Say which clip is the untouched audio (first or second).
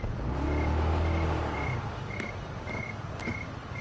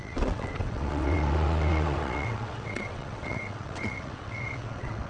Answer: first